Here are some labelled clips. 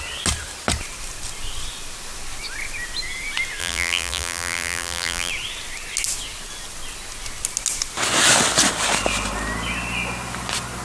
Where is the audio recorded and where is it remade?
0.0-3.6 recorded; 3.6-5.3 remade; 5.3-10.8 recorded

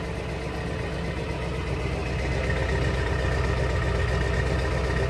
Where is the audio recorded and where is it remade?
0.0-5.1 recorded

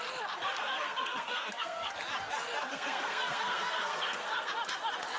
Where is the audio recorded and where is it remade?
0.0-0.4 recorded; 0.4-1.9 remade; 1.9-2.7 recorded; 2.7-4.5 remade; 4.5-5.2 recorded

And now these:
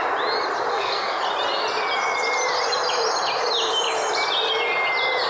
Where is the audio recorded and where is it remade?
0.0-0.7 recorded; 0.7-1.2 remade; 1.2-5.3 recorded

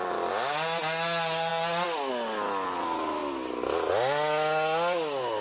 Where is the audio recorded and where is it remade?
0.0-5.4 recorded

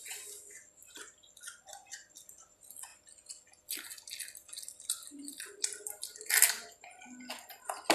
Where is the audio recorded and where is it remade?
0.0-7.9 recorded

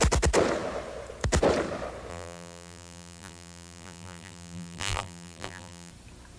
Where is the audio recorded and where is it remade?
0.0-2.1 recorded; 2.1-5.9 remade; 5.9-6.4 recorded